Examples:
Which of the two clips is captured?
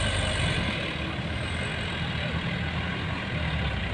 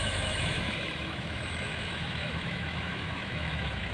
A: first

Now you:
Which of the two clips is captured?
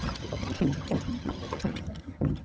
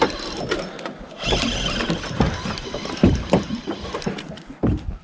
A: second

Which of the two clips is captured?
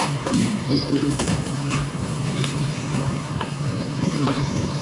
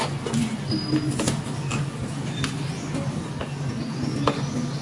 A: second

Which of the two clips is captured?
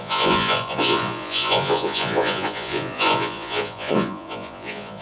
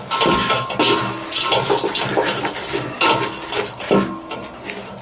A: second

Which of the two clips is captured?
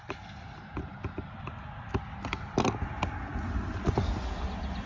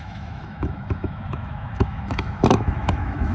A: first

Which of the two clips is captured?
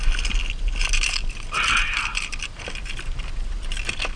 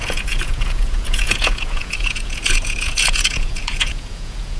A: first